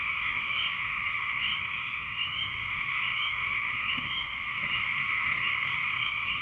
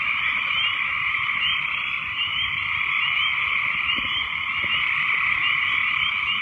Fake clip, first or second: first